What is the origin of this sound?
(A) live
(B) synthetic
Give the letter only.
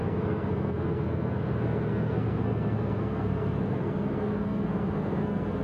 B